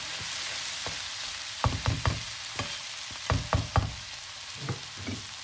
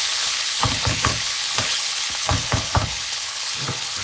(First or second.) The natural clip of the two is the first